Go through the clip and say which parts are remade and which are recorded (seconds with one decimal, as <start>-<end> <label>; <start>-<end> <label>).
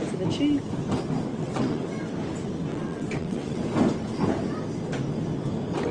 0.0-1.3 recorded; 1.3-1.9 remade; 1.9-2.7 recorded; 2.7-3.6 remade; 3.6-5.9 recorded